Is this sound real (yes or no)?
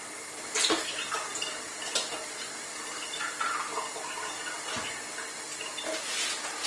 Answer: yes